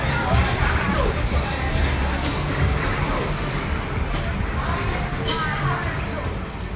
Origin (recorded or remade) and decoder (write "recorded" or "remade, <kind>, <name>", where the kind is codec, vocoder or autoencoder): recorded